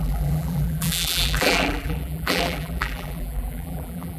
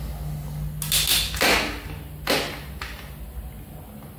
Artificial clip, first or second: first